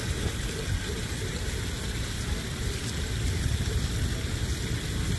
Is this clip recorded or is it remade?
recorded